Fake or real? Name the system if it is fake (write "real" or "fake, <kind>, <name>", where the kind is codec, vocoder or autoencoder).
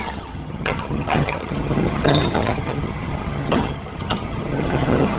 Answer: fake, vocoder, HiFi-GAN